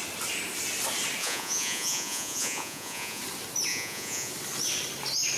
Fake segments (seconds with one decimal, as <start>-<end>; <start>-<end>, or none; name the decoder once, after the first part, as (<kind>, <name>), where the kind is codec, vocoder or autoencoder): 1.2-3.2 (vocoder, Vocos); 3.7-4.3